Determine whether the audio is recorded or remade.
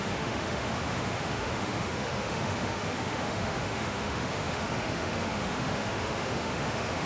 remade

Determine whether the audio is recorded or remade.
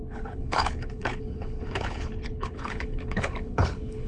remade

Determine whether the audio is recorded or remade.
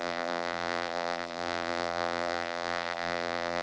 remade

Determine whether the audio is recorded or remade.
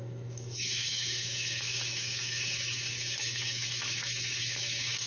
remade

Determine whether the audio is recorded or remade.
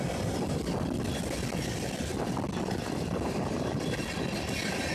recorded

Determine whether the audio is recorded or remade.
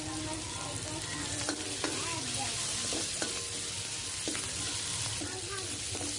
recorded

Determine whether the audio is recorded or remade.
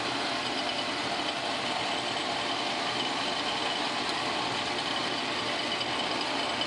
recorded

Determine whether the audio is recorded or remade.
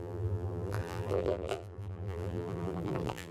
remade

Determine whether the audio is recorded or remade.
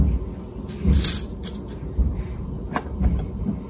recorded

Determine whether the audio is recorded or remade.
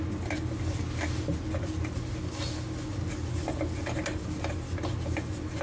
recorded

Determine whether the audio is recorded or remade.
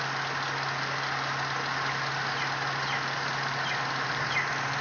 recorded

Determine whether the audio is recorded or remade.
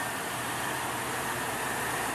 recorded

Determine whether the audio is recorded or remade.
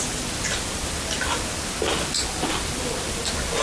recorded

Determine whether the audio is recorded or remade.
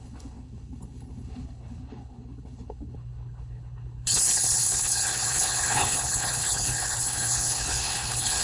remade